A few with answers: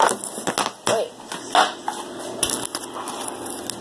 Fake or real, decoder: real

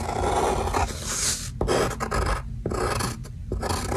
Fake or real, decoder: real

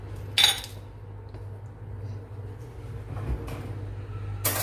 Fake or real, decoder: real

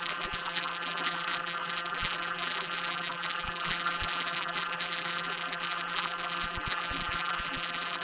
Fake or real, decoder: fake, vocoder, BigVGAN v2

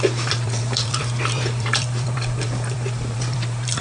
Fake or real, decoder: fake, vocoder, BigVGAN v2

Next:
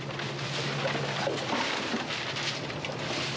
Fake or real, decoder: real